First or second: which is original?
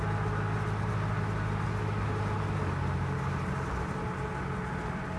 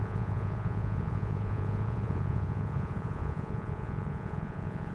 first